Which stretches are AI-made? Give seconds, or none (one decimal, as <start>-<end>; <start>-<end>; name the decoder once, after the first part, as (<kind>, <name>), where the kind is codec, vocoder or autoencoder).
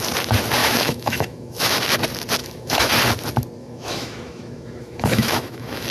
0.6-1.8 (autoencoder, DAC-VAE); 2.4-2.9; 3.6-5.9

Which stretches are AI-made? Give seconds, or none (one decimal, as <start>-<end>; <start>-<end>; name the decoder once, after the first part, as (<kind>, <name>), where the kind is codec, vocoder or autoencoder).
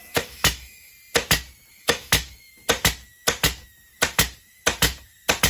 0.0-0.9 (autoencoder, DAC-VAE); 1.7-2.5